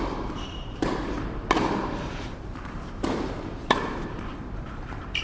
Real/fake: fake